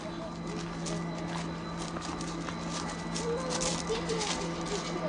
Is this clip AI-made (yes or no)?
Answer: no